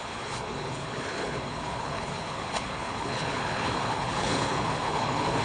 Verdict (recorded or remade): remade